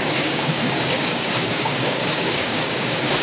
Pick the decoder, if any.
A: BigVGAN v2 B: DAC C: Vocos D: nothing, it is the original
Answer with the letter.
B